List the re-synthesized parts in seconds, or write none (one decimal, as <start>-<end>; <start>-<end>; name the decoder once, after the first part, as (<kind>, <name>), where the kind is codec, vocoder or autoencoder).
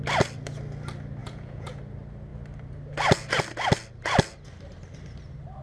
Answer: 1.2-1.8 (vocoder, Vocos)